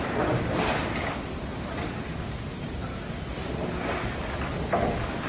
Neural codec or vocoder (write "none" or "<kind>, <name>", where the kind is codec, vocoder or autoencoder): none